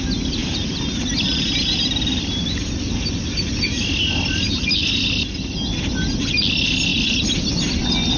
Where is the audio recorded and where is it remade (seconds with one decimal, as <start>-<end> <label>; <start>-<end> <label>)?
0.0-0.4 recorded; 0.4-4.0 remade; 4.0-6.9 recorded; 6.9-7.5 remade; 7.5-8.2 recorded